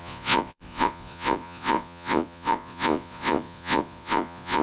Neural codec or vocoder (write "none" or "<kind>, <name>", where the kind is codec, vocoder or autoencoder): vocoder, Vocos